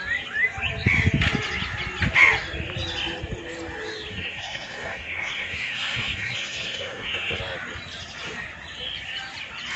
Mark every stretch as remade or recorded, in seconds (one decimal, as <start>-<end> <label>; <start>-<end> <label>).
0.0-4.1 recorded; 4.1-7.4 remade; 7.4-9.8 recorded